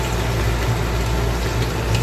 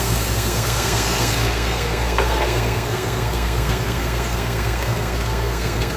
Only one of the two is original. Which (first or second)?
first